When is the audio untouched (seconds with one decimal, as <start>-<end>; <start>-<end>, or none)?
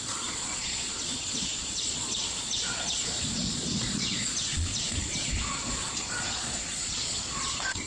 none